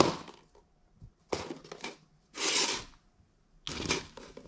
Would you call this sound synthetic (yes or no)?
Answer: no